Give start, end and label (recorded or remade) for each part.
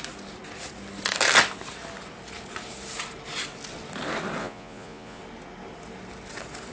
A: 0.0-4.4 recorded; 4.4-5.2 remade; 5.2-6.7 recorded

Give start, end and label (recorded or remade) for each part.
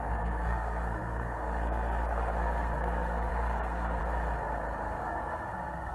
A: 0.0-4.0 remade; 4.0-5.0 recorded; 5.0-5.9 remade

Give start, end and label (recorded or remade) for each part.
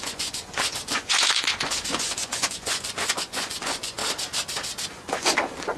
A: 0.0-4.0 remade; 4.0-4.9 recorded; 4.9-5.8 remade